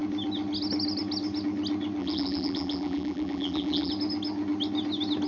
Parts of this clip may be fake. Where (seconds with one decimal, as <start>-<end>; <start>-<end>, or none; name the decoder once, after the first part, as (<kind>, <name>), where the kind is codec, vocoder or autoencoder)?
2.0-3.9 (vocoder, BigVGAN v2)